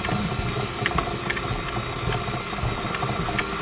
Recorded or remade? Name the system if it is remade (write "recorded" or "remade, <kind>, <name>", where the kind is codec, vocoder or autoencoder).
recorded